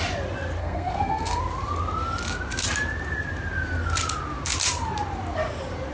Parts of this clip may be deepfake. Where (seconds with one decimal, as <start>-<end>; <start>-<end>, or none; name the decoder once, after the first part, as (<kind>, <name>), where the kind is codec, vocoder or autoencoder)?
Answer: 0.6-1.4 (codec, SNAC)